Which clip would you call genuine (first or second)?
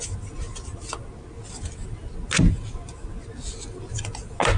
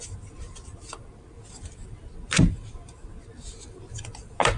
first